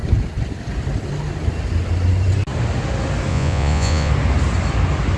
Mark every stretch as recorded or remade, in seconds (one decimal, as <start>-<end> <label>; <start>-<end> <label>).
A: 0.0-3.3 recorded; 3.3-4.1 remade; 4.1-5.2 recorded